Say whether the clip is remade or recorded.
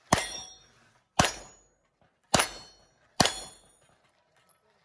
remade